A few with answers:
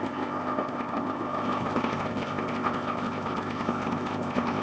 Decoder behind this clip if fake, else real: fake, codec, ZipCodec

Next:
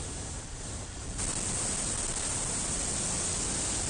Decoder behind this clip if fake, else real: real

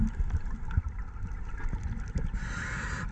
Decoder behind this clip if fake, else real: real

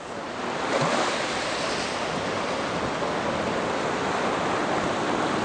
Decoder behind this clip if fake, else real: real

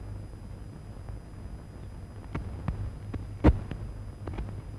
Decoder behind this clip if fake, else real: real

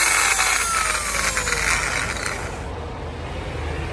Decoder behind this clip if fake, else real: real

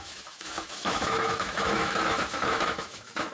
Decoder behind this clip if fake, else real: fake, autoencoder, DAC-VAE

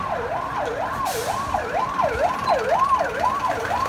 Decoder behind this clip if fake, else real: real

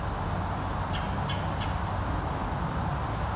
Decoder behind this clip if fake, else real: real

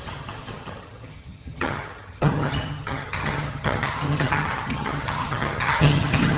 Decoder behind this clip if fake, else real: fake, vocoder, HiFi-GAN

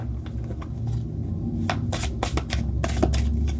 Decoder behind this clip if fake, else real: real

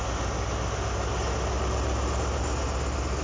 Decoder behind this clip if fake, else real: real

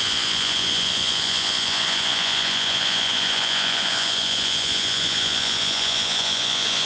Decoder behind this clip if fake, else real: fake, vocoder, Vocos